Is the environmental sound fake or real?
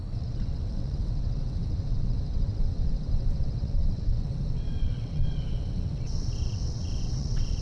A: fake